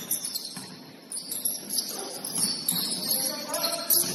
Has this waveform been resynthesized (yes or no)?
no